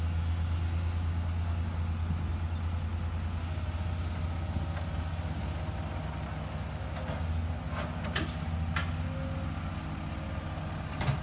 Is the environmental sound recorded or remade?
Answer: recorded